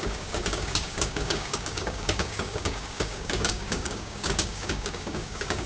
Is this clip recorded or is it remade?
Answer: remade